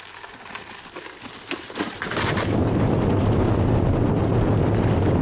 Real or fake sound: real